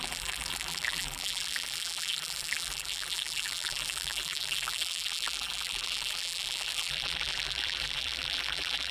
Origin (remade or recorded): remade